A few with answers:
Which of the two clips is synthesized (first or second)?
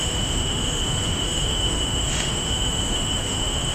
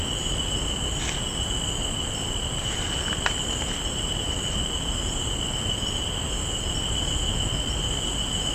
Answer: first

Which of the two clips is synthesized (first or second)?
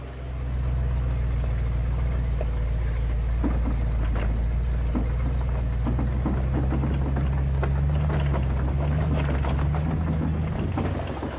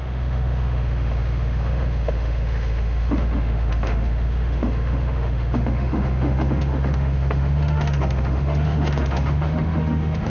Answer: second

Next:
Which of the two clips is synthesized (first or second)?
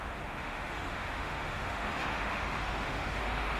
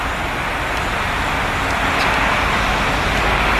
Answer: first